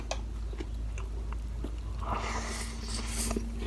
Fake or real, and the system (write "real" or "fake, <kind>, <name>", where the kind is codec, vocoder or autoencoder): real